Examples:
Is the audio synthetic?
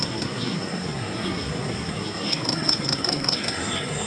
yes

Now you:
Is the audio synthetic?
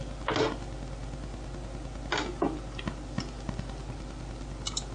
no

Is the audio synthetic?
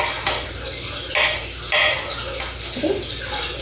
no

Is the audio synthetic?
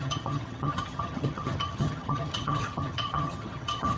yes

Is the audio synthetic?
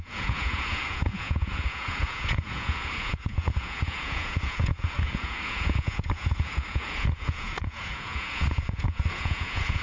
yes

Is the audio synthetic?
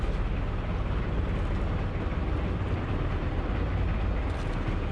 no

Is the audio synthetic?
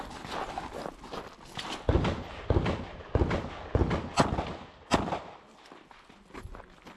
no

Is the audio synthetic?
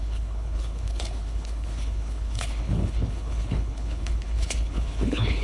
yes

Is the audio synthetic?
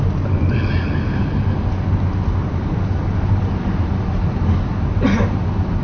no